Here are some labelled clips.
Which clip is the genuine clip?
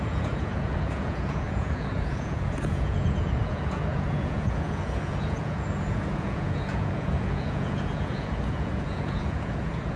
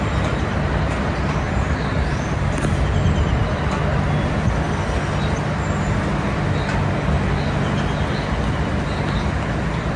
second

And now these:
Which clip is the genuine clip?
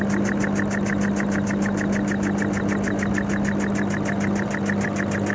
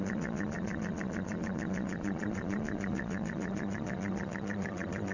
first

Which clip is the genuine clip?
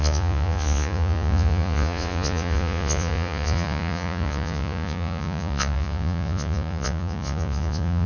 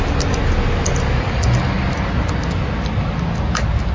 second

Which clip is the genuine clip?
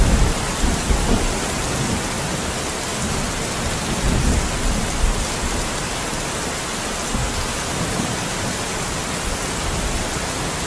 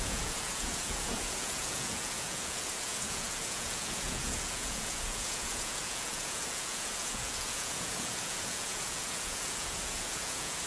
first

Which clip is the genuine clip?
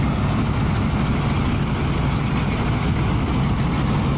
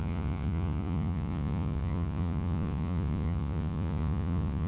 first